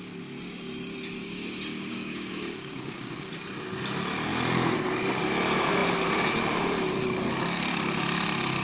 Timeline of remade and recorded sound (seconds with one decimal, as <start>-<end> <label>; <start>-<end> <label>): 0.0-1.2 recorded; 1.2-3.3 remade; 3.3-8.6 recorded